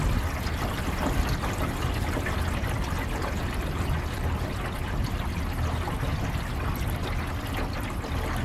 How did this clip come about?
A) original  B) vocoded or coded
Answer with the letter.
A